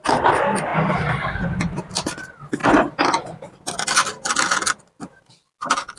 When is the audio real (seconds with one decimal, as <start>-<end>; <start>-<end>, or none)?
0.0-2.6; 3.4-4.0; 5.0-6.0